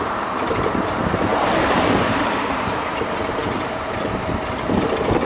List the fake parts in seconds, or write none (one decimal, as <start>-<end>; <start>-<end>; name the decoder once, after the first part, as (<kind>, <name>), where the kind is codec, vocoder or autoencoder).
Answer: 0.0-5.3 (vocoder, BigVGAN v2)